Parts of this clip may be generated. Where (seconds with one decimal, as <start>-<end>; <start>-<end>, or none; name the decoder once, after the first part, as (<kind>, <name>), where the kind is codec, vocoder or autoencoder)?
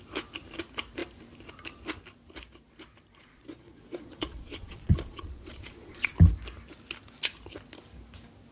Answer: 3.2-6.1 (vocoder, Vocos)